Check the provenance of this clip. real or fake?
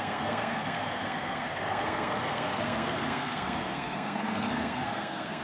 fake